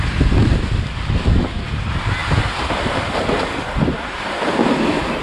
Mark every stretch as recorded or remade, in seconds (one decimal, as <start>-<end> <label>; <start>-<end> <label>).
0.0-5.2 recorded